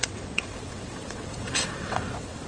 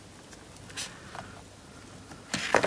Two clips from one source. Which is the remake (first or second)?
first